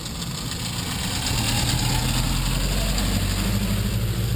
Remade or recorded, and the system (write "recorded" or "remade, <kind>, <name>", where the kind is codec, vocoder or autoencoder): recorded